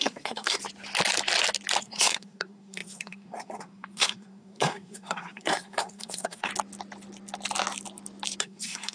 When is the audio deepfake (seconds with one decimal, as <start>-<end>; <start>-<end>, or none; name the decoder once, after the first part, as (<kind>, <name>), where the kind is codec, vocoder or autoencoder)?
0.0-0.6 (codec, SNAC); 1.8-6.5; 8.4-8.9